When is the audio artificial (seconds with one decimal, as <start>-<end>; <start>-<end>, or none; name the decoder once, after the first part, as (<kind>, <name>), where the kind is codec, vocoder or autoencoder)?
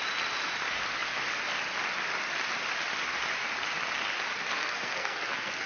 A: 4.5-5.7 (codec, SNAC)